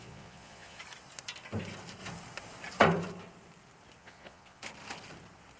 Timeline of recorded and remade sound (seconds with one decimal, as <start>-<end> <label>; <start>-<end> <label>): 0.0-0.8 remade; 0.8-4.0 recorded; 4.0-4.6 remade; 4.6-5.6 recorded